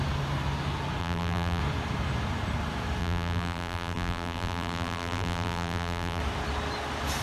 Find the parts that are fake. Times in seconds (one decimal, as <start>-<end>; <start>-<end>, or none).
1.0-1.6; 3.0-6.2